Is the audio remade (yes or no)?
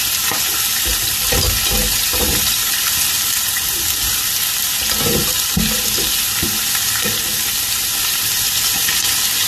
no